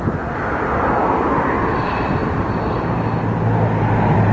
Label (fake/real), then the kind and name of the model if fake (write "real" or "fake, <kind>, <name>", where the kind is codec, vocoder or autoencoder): real